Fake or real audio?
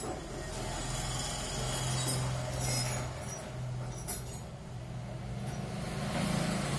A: real